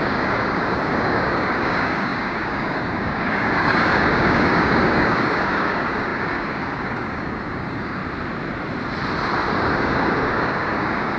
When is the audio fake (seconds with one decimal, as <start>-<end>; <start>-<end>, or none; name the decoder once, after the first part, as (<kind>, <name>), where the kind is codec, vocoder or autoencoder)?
0.0-8.0 (codec, DAC); 9.5-11.2